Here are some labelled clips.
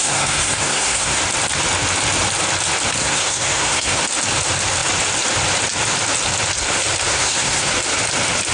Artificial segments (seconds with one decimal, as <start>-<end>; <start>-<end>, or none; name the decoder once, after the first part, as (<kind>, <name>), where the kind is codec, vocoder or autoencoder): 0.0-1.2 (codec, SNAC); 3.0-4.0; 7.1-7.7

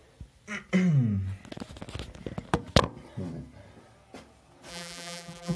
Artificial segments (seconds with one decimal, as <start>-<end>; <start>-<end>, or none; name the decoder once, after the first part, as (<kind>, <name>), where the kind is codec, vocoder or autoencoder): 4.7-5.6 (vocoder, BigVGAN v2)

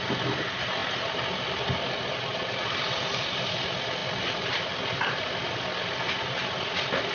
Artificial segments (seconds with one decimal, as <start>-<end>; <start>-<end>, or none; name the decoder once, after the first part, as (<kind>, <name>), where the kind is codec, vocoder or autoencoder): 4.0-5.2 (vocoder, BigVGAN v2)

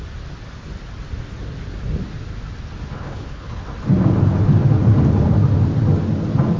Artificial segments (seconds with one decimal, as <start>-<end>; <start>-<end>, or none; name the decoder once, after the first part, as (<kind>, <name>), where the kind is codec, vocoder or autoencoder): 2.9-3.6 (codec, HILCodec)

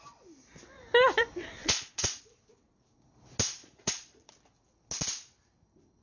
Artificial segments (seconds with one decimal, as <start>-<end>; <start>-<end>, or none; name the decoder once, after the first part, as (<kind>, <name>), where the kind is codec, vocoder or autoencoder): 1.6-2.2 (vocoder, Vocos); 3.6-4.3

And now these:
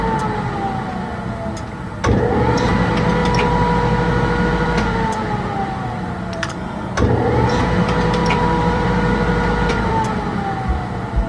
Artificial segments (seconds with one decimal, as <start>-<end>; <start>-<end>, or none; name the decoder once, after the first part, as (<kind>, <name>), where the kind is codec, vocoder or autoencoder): 3.2-7.5 (vocoder, BigVGAN v2); 8.2-10.2